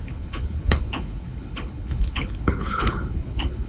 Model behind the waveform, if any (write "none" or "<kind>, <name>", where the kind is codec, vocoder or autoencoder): codec, HILCodec